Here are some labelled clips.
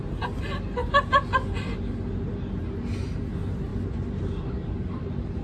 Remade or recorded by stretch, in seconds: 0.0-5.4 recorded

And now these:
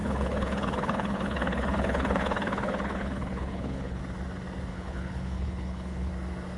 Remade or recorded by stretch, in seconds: 0.0-4.0 remade; 4.0-4.7 recorded; 4.7-6.1 remade; 6.1-6.6 recorded

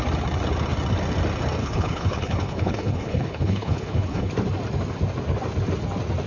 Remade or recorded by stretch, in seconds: 0.0-1.6 recorded; 1.6-4.3 remade; 4.3-6.3 recorded

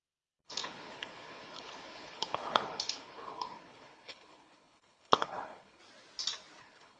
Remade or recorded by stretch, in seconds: 0.0-5.8 remade; 5.8-6.6 recorded; 6.6-7.0 remade

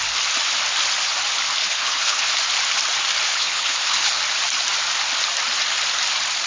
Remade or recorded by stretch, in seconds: 0.0-1.6 recorded; 1.6-2.2 remade; 2.2-3.3 recorded; 3.3-4.2 remade; 4.2-6.5 recorded

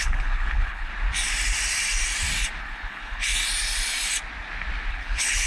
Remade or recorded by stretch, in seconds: 0.0-0.9 remade; 0.9-2.6 recorded; 2.6-3.3 remade; 3.3-4.9 recorded; 4.9-5.5 remade

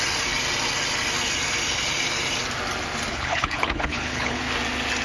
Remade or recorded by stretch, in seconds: 0.0-3.1 recorded; 3.1-4.4 remade; 4.4-5.0 recorded

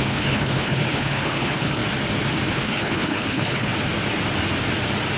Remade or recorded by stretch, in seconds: 0.0-1.8 remade; 1.8-2.5 recorded; 2.5-3.7 remade; 3.7-5.2 recorded